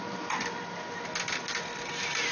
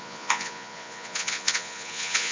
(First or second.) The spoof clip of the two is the second